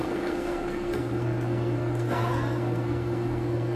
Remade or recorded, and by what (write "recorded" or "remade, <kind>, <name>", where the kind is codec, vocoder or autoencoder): remade, codec, SNAC